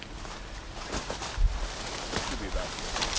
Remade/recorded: recorded